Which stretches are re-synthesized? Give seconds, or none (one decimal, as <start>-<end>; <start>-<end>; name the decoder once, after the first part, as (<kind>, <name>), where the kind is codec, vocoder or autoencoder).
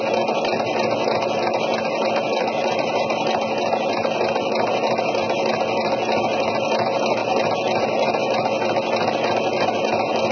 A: none